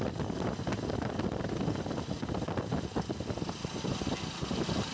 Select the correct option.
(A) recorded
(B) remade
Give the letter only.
A